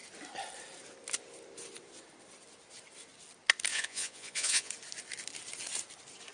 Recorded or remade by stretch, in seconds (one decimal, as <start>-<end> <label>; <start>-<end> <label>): 0.0-3.7 recorded; 3.7-4.7 remade; 4.7-6.3 recorded